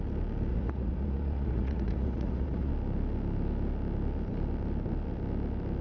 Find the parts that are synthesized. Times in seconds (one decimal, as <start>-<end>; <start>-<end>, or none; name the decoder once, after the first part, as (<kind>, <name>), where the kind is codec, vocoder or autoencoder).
0.5-2.7 (vocoder, Vocos)